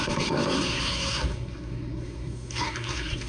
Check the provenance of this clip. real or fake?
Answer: fake